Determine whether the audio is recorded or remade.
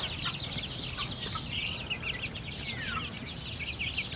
recorded